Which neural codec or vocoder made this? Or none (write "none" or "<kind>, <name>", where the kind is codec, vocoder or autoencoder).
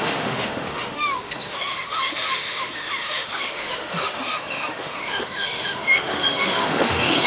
autoencoder, DAC-VAE